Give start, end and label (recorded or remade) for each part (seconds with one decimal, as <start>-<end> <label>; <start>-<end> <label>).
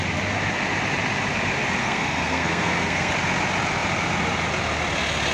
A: 0.0-1.8 recorded; 1.8-3.1 remade; 3.1-5.3 recorded